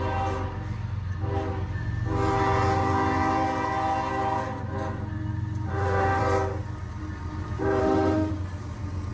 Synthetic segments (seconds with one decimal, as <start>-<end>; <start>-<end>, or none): 5.7-6.2; 7.8-8.3